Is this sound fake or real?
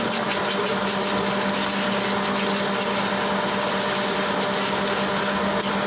real